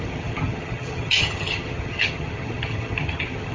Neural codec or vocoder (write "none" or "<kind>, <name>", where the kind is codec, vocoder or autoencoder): vocoder, HiFi-GAN